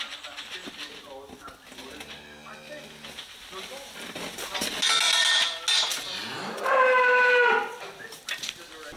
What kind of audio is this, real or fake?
real